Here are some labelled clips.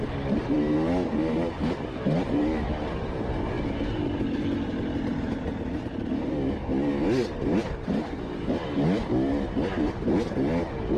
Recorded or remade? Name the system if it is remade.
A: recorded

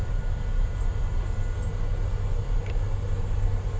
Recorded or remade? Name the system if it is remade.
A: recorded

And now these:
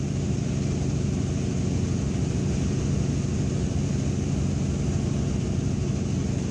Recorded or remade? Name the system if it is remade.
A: recorded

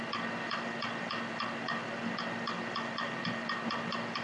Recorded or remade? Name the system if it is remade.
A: recorded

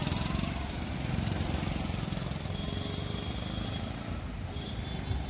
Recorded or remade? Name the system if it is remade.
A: recorded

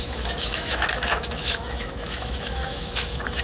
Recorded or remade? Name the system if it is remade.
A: remade, autoencoder, DAC-VAE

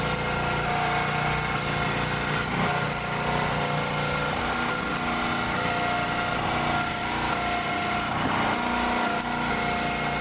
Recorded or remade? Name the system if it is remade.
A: recorded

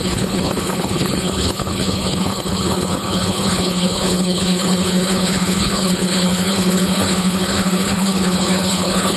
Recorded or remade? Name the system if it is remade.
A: remade, codec, HILCodec